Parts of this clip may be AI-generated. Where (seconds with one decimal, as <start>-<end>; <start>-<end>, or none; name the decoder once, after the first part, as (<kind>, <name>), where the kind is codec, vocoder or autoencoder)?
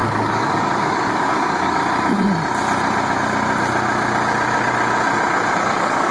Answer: 0.0-1.8 (codec, DAC); 5.5-6.1